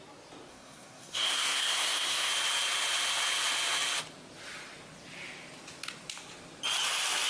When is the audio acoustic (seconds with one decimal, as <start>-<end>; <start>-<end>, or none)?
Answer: 0.0-0.5; 2.3-7.3

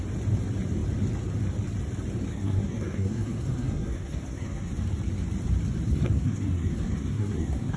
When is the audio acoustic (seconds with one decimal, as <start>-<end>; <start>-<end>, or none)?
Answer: 0.0-2.3; 4.7-5.9

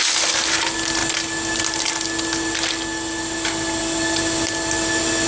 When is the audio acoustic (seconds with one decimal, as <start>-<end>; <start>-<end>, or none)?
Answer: 0.0-5.3